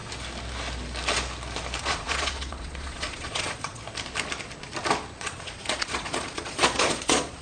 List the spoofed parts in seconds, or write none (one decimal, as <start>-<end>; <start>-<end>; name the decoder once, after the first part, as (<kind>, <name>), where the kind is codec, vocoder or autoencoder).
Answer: 1.8-3.8 (vocoder, Vocos); 5.2-7.4